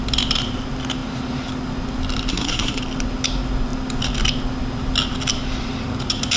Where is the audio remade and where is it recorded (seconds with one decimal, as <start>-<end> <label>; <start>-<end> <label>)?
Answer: 0.0-2.3 recorded; 2.3-2.8 remade; 2.8-6.4 recorded